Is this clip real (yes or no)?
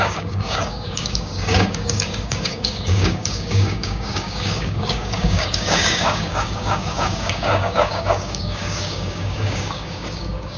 no